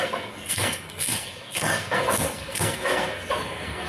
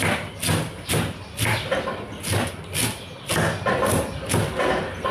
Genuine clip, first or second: second